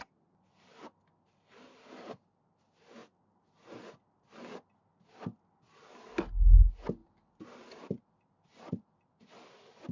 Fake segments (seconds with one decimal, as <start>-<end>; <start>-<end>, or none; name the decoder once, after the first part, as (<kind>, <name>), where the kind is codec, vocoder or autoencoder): 7.0-9.1 (vocoder, BigVGAN v2)

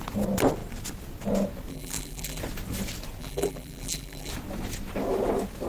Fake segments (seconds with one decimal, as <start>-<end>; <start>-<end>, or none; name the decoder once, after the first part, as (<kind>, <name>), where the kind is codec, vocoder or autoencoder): 1.7-2.4 (vocoder, BigVGAN v2); 3.2-4.3

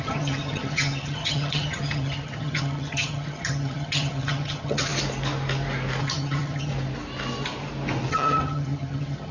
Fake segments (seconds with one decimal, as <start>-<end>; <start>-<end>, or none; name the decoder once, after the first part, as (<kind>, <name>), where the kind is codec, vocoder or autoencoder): 0.0-4.9 (vocoder, HiFi-GAN); 6.0-6.7; 8.1-9.3

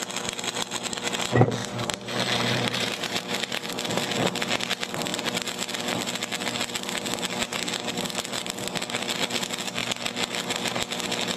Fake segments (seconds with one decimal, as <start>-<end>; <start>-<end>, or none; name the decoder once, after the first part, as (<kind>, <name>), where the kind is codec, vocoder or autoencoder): 1.6-3.7 (vocoder, BigVGAN v2)

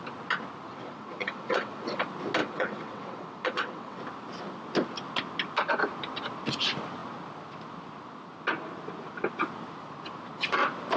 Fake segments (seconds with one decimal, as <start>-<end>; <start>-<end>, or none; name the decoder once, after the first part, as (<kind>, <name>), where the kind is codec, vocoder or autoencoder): 0.7-2.0 (vocoder, WaveNeXt); 2.4-4.0